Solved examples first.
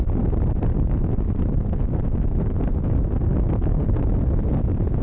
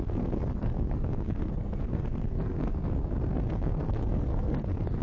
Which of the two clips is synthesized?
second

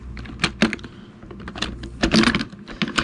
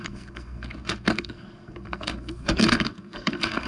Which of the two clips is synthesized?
second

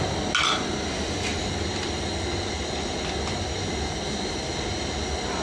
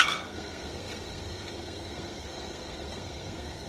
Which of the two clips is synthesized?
second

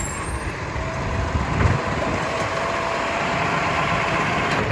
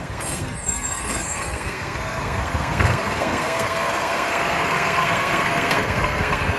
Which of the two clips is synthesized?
second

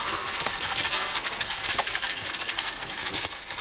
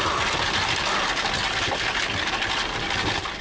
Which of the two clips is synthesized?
first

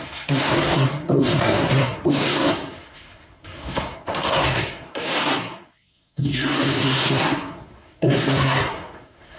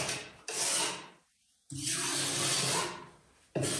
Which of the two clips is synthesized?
first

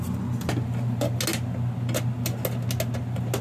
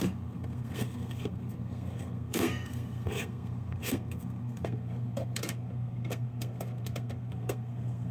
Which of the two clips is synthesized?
second